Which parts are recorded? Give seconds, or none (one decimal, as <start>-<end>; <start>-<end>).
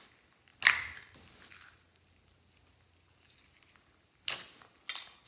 0.0-5.3